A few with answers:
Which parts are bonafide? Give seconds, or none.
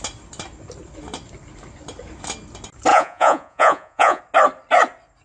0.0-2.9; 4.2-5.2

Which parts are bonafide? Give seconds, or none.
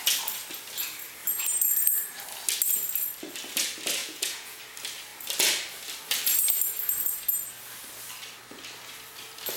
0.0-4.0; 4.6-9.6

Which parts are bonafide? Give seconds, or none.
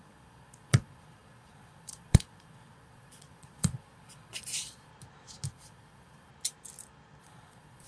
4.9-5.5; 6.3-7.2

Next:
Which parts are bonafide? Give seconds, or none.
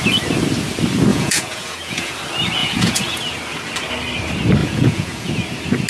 0.0-1.1; 2.1-2.6; 3.2-4.6; 5.3-5.9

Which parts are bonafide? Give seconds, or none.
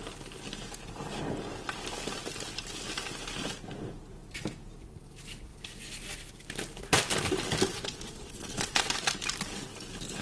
0.0-7.7; 8.9-10.2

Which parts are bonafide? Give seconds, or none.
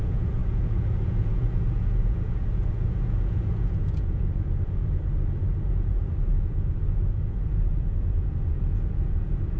none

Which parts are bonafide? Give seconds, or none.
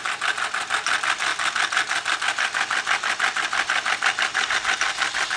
0.0-5.4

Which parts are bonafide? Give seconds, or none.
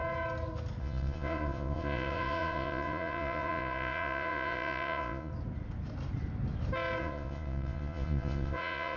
0.0-0.8; 5.3-7.0